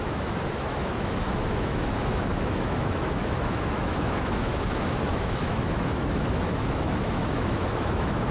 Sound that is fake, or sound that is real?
fake